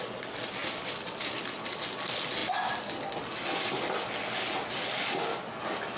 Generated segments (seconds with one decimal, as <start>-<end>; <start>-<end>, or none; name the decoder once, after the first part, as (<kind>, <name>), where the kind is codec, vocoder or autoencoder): 0.6-1.3 (vocoder, BigVGAN v2)